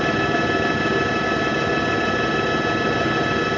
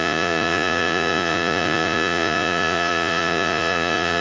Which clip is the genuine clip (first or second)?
first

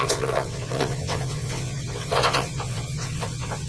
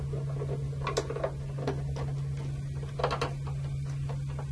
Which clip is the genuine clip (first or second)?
second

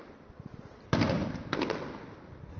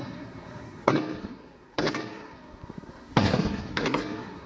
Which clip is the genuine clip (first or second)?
first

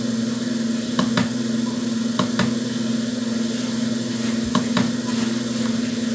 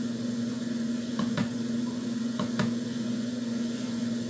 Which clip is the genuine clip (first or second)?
first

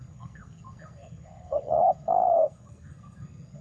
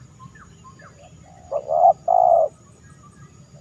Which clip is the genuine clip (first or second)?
second